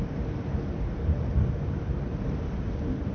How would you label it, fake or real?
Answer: real